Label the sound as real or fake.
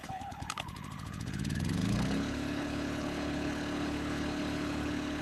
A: fake